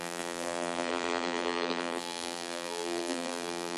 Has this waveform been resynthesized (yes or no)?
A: yes